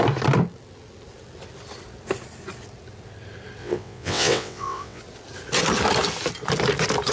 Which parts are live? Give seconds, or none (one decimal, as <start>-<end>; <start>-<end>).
0.0-3.6; 5.0-7.1